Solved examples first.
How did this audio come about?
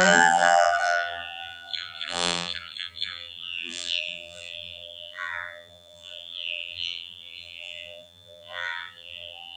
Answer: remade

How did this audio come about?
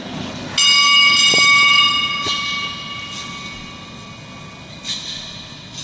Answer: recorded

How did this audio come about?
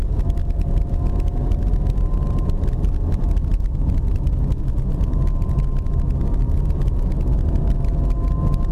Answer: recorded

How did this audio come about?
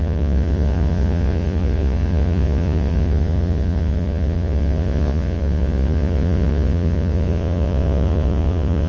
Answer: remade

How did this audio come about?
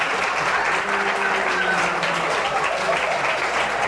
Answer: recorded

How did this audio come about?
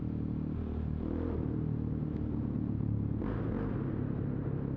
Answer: recorded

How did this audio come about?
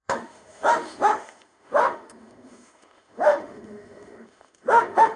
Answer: remade